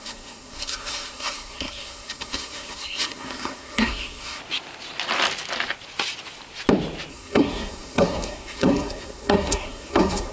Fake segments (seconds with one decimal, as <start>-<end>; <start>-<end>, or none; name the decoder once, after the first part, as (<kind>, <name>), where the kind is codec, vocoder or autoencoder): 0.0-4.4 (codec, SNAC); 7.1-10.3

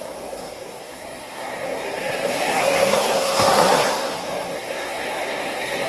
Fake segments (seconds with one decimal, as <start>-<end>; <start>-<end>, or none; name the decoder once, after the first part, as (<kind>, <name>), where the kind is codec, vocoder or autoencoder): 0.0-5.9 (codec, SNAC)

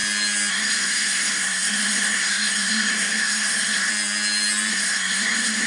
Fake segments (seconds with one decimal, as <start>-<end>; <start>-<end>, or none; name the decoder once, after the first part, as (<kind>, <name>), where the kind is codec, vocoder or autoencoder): 0.5-3.9 (codec, SNAC); 4.7-5.7